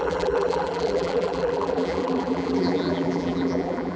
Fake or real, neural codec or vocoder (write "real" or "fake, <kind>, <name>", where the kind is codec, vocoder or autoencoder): fake, vocoder, BigVGAN v2